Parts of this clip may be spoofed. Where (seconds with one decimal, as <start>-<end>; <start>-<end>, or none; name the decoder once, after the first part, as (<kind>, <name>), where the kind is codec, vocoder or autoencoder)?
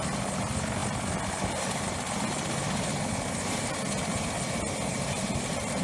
4.9-5.8 (vocoder, BigVGAN v2)